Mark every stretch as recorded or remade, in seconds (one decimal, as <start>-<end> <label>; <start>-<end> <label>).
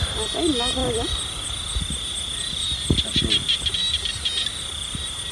0.0-5.3 recorded